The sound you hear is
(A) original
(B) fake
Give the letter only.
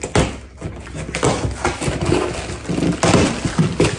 A